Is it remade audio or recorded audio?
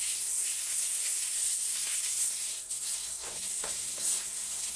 remade